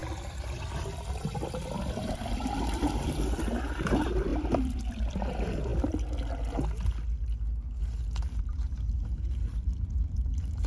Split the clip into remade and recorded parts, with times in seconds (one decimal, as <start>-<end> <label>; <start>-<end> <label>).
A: 0.0-0.7 recorded; 0.7-5.7 remade; 5.7-8.4 recorded; 8.4-10.7 remade

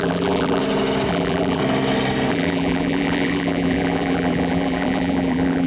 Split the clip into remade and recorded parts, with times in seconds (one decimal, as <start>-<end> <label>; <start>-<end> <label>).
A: 0.0-0.6 remade; 0.6-1.1 recorded; 1.1-1.6 remade; 1.6-2.3 recorded; 2.3-5.7 remade

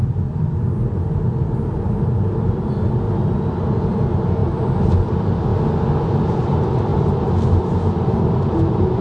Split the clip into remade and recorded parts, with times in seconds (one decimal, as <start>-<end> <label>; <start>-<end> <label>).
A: 0.0-3.2 remade; 3.2-3.8 recorded; 3.8-5.5 remade; 5.5-6.2 recorded; 6.2-6.9 remade; 6.9-7.6 recorded; 7.6-9.0 remade

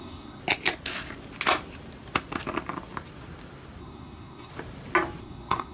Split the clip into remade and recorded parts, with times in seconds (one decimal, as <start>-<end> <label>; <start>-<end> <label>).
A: 0.0-0.4 remade; 0.4-3.8 recorded; 3.8-4.5 remade; 4.5-5.2 recorded; 5.2-5.7 remade